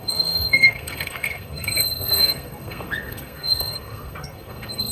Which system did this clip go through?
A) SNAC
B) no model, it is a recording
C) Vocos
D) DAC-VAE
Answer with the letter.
A